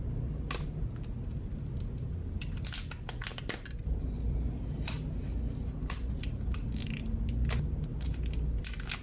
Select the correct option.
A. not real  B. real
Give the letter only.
B